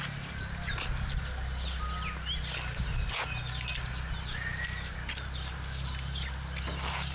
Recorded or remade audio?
recorded